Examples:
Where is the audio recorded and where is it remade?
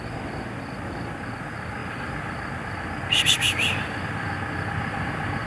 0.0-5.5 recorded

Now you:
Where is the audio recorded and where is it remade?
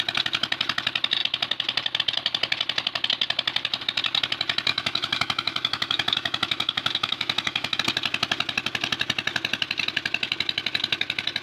0.0-4.7 recorded; 4.7-7.8 remade; 7.8-11.4 recorded